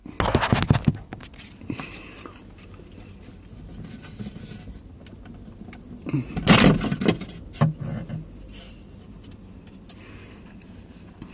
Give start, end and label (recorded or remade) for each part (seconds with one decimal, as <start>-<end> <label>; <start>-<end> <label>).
0.0-11.3 recorded